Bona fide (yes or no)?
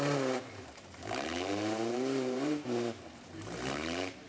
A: no